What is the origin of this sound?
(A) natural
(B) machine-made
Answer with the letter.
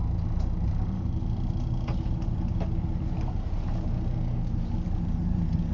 A